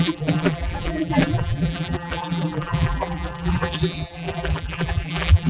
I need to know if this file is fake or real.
fake